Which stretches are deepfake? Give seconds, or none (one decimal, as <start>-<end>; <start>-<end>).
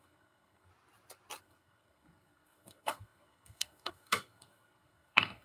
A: 0.0-0.7; 1.4-5.4